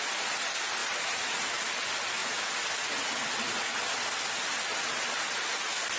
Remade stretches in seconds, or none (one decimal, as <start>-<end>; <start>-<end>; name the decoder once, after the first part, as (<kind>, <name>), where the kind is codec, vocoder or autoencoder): 0.8-1.6 (vocoder, BigVGAN v2)